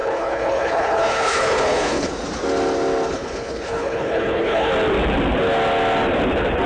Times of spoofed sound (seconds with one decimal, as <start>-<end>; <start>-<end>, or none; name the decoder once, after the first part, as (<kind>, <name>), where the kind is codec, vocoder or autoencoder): 0.0-2.1 (codec, HILCodec); 3.1-4.7